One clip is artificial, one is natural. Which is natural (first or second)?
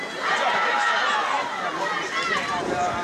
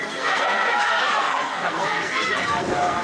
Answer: first